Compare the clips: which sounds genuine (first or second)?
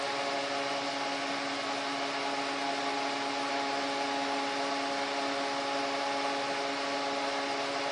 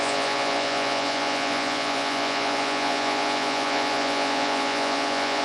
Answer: first